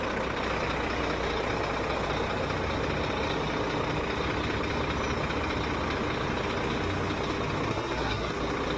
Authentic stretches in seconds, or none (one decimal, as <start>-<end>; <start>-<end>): 0.0-7.7; 8.3-8.8